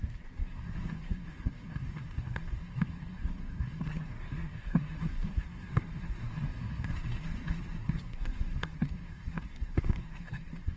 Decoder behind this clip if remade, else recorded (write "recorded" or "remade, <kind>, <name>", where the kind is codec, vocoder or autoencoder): remade, codec, SNAC